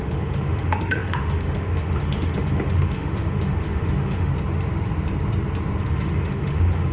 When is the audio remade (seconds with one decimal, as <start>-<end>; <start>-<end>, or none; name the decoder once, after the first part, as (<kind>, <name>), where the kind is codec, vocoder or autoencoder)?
0.0-4.3 (autoencoder, DAC-VAE); 5.8-6.9